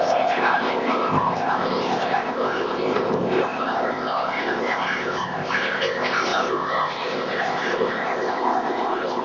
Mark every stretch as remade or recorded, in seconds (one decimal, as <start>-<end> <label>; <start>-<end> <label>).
0.0-9.2 remade